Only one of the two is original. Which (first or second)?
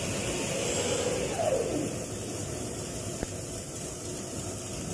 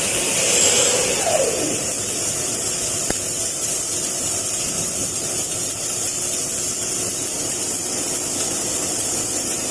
first